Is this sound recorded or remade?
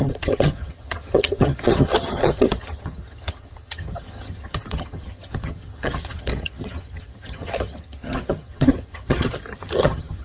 remade